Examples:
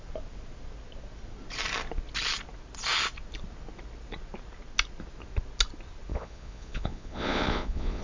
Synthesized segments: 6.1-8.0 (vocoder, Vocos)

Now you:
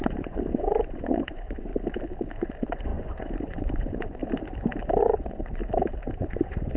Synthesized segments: 0.0-1.7 (vocoder, Vocos); 2.3-4.2; 5.0-5.6; 6.2-6.8

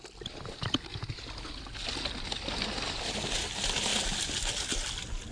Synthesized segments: none

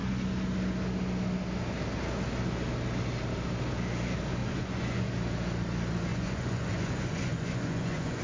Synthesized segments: 4.4-5.1 (vocoder, Vocos); 6.1-8.2

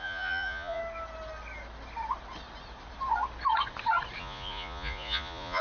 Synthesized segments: 0.0-0.8 (vocoder, Vocos); 4.2-5.6

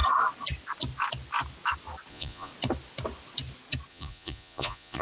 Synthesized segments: 2.1-2.5 (vocoder, Vocos); 3.9-5.0

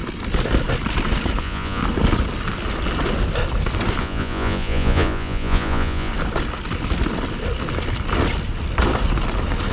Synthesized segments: 1.4-1.8 (vocoder, Vocos); 4.0-6.1

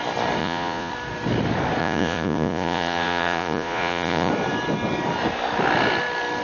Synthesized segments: 0.4-0.9 (vocoder, Vocos); 1.8-4.3